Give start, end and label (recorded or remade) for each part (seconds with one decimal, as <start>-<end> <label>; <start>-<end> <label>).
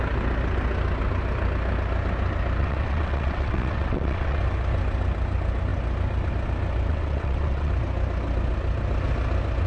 0.0-2.6 recorded; 2.6-4.4 remade; 4.4-6.9 recorded; 6.9-7.7 remade; 7.7-9.7 recorded